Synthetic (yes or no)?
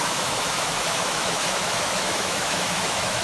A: yes